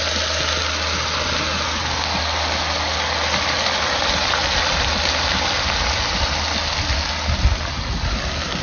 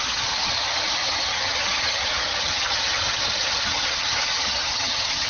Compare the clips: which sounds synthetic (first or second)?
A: second